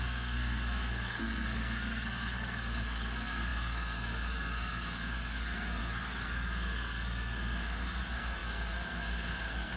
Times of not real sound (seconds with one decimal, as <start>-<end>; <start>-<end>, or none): 0.0-9.8